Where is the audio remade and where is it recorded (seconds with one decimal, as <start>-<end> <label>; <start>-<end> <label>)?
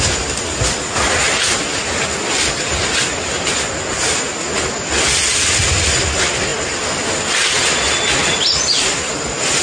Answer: 0.0-9.6 recorded